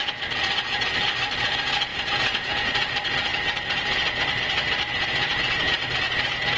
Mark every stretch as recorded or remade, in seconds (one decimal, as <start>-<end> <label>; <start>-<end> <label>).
0.0-1.9 recorded; 1.9-2.7 remade; 2.7-6.6 recorded